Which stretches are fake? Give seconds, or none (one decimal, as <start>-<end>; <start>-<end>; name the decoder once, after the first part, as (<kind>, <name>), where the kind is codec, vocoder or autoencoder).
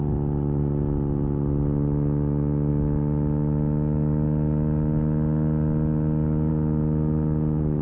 none